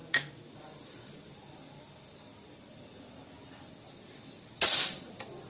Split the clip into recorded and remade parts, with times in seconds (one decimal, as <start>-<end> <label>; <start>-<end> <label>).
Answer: 0.0-5.5 recorded